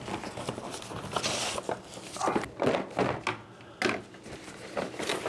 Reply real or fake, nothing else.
real